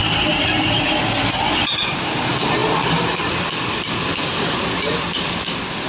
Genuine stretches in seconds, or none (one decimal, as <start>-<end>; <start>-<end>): 0.0-5.9